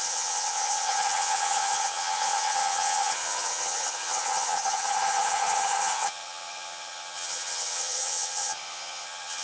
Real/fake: fake